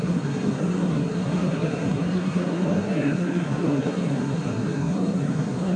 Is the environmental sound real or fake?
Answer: fake